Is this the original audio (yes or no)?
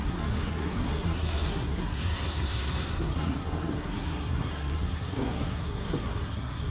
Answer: no